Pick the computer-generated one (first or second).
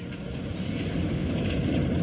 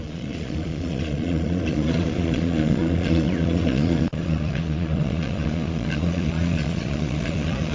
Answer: second